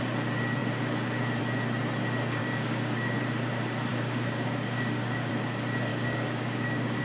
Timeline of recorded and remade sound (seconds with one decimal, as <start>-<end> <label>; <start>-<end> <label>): 0.0-2.4 recorded; 2.4-3.2 remade; 3.2-3.9 recorded; 3.9-5.3 remade; 5.3-5.9 recorded; 5.9-7.0 remade